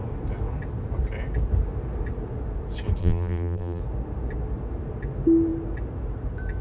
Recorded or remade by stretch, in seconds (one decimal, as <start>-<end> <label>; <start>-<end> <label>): 0.0-3.0 recorded; 3.0-3.8 remade; 3.8-6.6 recorded